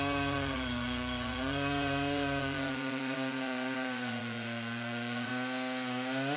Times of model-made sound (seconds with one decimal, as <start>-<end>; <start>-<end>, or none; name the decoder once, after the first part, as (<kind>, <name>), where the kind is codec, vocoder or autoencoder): 0.0-5.3 (vocoder, Vocos)